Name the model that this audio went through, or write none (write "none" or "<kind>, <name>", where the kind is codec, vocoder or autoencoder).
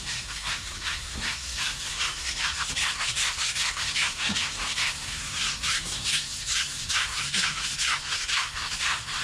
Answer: codec, SNAC